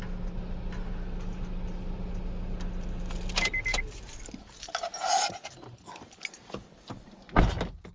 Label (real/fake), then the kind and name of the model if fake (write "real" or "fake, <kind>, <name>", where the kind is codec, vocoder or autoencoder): real